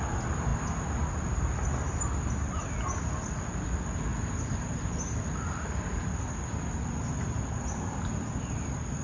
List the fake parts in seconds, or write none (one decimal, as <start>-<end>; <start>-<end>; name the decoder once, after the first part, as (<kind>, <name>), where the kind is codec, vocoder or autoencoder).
none